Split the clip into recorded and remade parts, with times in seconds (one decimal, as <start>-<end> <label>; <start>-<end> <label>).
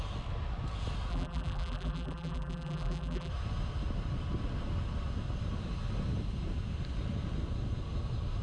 0.0-1.1 recorded; 1.1-3.3 remade; 3.3-8.4 recorded